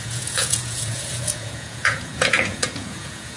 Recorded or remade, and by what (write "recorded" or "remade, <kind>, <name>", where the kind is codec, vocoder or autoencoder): remade, vocoder, Vocos